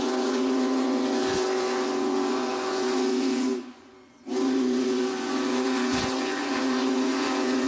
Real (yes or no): no